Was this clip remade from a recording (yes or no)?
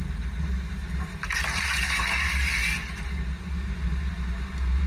yes